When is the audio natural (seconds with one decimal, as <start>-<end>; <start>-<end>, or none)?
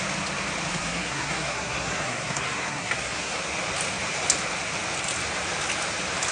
0.0-0.7; 3.4-6.3